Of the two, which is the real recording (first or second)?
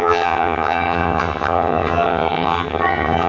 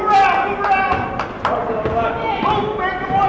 second